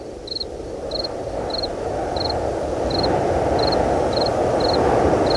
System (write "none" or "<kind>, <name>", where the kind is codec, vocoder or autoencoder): none